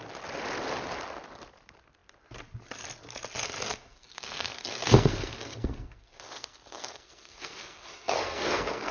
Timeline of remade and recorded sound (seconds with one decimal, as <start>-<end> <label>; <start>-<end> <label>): 0.0-3.7 recorded; 3.7-8.9 remade

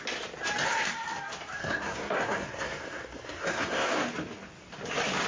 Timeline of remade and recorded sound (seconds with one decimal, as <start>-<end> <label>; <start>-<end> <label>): 0.0-1.6 recorded; 1.6-3.9 remade; 3.9-5.3 recorded